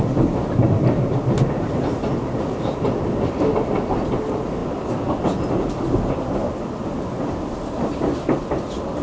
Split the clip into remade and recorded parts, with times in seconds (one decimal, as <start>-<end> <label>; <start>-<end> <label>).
0.0-9.0 recorded